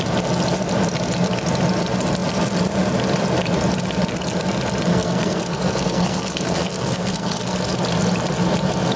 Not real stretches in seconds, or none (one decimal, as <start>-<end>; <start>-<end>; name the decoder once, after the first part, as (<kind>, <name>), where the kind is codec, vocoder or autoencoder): 4.9-7.6 (codec, SNAC)

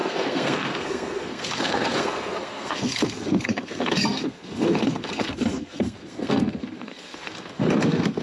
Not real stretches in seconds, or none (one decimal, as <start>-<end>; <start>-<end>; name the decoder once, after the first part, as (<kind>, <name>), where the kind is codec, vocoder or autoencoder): 0.0-8.2 (codec, SNAC)

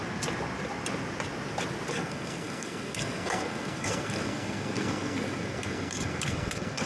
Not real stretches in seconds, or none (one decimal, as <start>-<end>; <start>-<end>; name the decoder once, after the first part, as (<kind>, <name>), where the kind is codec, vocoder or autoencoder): 1.9-6.9 (codec, SNAC)

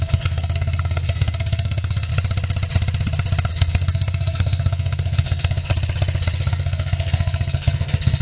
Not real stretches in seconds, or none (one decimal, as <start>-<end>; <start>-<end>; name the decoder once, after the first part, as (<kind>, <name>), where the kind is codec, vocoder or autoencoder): 0.0-2.1 (codec, SNAC); 3.5-5.7; 6.5-8.2

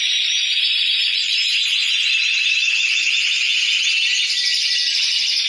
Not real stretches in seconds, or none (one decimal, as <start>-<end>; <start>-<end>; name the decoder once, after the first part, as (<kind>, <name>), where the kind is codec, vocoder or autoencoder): none

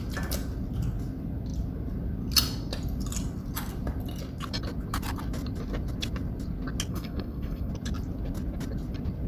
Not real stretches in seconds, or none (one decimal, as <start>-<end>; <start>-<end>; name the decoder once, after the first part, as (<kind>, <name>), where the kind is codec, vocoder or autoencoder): 6.9-7.7 (codec, SNAC)